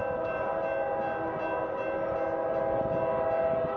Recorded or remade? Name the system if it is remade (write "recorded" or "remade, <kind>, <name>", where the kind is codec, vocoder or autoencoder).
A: recorded